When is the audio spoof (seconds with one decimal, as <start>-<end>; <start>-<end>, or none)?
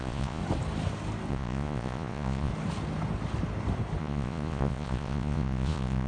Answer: 0.0-0.4; 1.3-2.5; 4.0-6.1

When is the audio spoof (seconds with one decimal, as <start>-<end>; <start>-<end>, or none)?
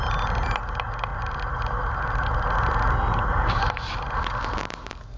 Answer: 1.1-4.2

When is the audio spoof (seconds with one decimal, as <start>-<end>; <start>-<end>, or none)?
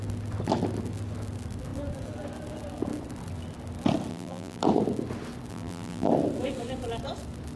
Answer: 4.1-4.6; 5.5-6.1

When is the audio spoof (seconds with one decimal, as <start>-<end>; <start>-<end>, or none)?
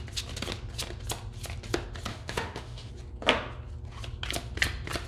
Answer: 2.1-2.9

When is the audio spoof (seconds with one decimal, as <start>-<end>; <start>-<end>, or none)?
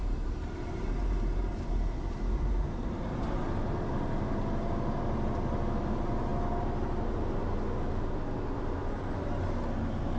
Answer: 0.0-3.4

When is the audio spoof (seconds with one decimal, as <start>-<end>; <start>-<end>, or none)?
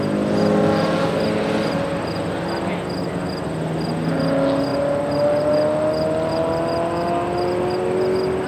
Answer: none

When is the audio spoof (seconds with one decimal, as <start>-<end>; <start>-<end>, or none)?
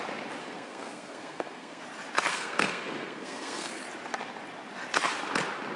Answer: 0.4-1.8; 2.3-3.8